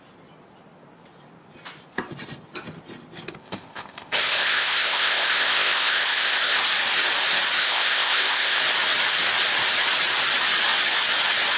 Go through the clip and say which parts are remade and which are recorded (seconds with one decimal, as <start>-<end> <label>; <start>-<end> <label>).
0.0-3.4 recorded; 3.4-6.6 remade; 6.6-7.6 recorded; 7.6-8.6 remade; 8.6-11.6 recorded